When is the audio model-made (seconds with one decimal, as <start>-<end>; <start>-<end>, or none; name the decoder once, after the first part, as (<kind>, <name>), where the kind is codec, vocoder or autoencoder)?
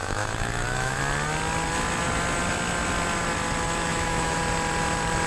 0.0-1.0 (autoencoder, DAC-VAE); 3.9-4.4